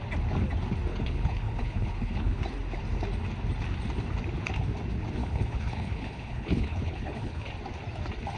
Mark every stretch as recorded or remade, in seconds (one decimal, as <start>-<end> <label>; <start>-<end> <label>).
0.0-0.9 recorded; 0.9-2.4 remade; 2.4-5.2 recorded; 5.2-7.5 remade; 7.5-8.4 recorded

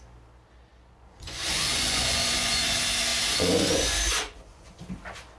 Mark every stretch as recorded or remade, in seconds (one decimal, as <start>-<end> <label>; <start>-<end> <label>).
0.0-0.7 recorded; 0.7-2.6 remade; 2.6-3.1 recorded; 3.1-4.8 remade; 4.8-5.4 recorded